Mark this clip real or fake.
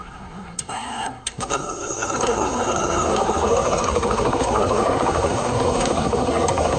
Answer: fake